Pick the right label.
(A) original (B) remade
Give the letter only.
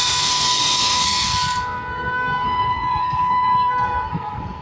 B